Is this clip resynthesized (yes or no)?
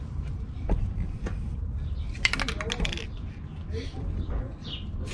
no